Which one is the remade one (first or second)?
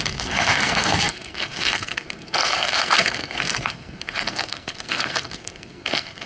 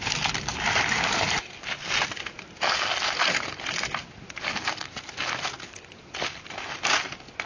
first